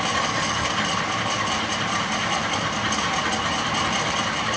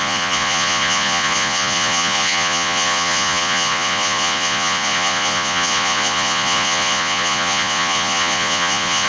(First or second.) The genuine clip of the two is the first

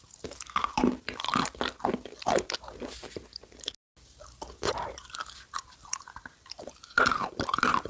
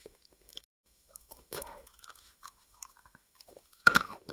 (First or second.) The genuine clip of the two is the first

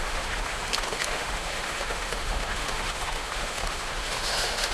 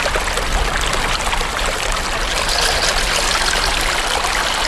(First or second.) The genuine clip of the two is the second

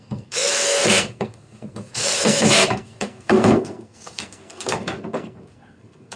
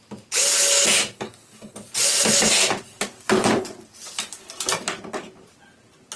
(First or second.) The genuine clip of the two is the second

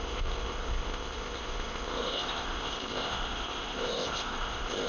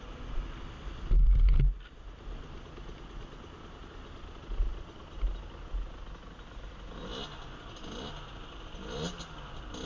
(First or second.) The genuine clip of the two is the second